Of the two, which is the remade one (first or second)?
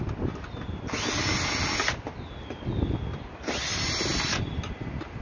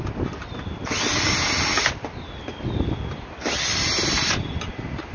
second